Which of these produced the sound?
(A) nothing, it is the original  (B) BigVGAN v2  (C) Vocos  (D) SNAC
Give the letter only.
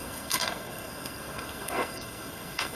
D